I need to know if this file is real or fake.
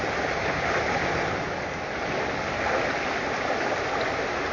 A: real